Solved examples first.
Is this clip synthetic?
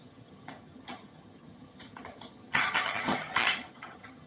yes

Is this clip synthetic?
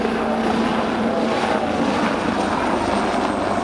no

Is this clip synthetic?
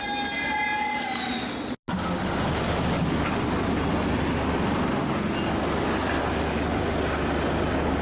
no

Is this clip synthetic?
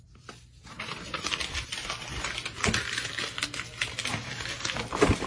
no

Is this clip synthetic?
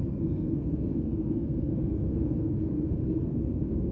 yes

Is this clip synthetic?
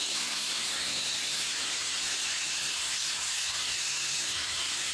yes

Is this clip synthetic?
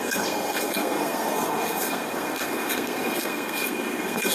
yes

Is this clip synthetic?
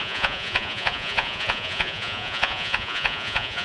yes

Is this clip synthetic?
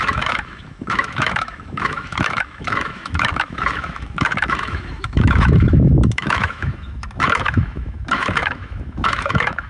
yes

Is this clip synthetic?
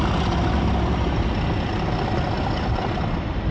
no